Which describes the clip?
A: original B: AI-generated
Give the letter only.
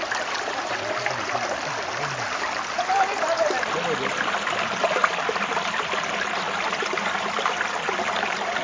A